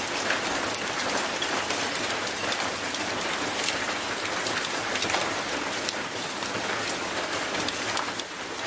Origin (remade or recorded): recorded